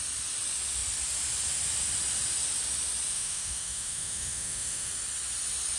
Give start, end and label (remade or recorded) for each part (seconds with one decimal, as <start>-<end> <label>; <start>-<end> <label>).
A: 0.0-3.1 recorded; 3.1-4.9 remade; 4.9-5.8 recorded